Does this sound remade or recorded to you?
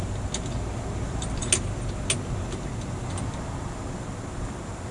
recorded